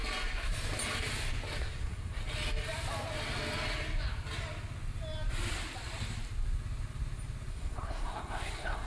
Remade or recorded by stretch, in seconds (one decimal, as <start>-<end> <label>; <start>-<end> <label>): 0.0-1.6 recorded; 1.6-2.2 remade; 2.2-7.5 recorded; 7.5-8.9 remade